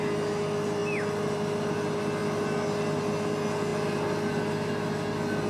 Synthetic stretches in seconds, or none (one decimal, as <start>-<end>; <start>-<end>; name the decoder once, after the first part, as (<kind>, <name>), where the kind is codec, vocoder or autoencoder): none